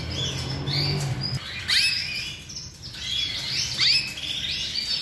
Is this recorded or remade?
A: recorded